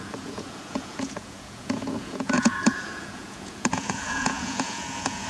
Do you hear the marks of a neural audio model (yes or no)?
yes